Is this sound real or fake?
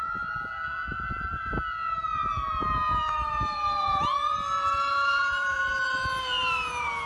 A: fake